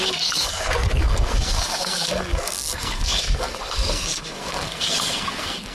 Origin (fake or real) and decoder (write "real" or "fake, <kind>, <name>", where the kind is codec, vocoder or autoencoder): fake, codec, SNAC